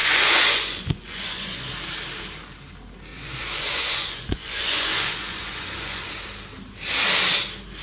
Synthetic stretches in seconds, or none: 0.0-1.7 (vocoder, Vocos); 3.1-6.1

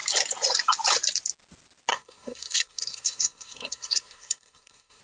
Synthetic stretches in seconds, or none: 1.9-5.0 (codec, SNAC)

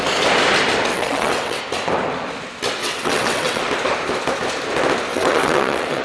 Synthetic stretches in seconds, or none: 0.9-1.6 (vocoder, WaveNeXt); 2.8-3.6; 5.1-6.0

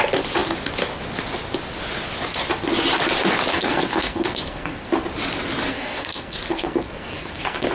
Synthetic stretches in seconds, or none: 3.5-4.9 (codec, SNAC); 5.7-7.7

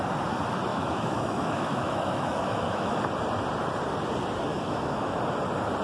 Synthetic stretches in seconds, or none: 0.7-3.0 (autoencoder, DAC-VAE); 4.5-5.2

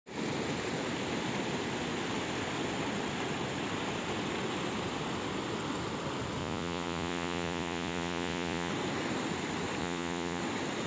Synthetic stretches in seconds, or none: 6.4-8.7 (vocoder, Vocos); 9.8-10.4